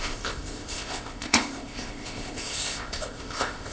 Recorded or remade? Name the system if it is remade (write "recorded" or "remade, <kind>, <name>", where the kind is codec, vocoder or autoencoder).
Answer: remade, codec, ZipCodec